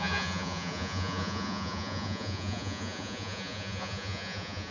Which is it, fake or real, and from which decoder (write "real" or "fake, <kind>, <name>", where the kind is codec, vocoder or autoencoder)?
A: fake, vocoder, Vocos